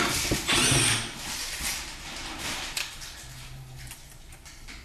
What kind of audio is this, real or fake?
real